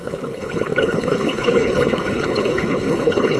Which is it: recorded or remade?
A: remade